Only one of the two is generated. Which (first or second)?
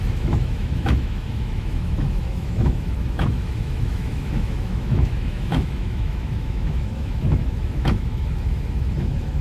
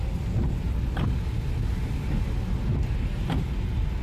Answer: first